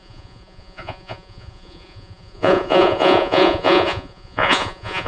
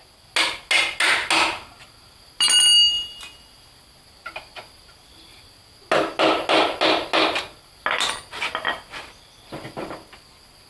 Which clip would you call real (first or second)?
second